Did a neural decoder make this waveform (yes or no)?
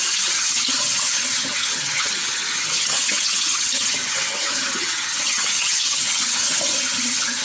yes